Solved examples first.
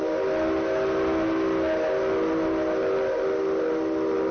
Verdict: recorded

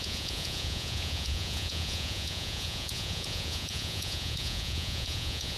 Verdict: remade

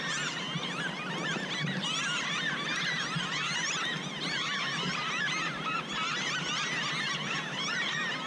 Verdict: recorded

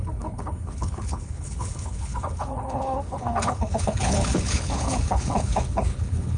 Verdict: remade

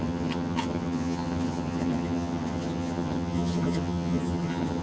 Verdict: remade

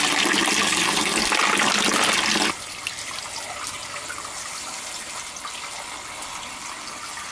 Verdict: recorded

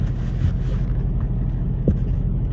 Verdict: recorded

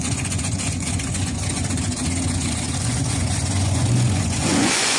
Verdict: remade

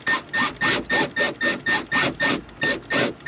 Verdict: recorded